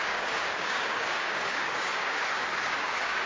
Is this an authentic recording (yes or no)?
no